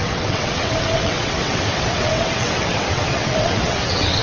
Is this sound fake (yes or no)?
yes